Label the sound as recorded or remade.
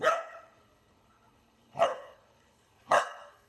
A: remade